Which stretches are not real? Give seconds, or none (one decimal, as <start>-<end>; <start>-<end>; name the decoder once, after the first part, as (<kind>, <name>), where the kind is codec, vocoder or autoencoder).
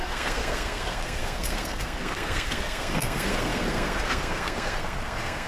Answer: 0.0-5.5 (codec, SNAC)